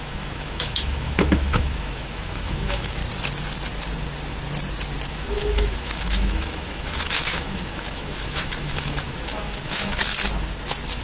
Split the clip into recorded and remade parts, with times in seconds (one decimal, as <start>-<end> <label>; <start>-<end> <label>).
0.0-3.0 remade; 3.0-5.1 recorded; 5.1-10.0 remade; 10.0-11.0 recorded